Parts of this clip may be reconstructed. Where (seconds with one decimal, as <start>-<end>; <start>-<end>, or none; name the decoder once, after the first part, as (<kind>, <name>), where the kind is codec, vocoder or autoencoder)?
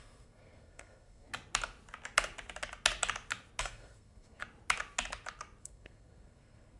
0.0-1.3 (codec, SNAC); 3.6-4.4; 5.6-6.8